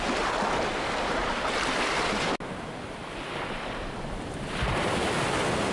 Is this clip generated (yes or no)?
no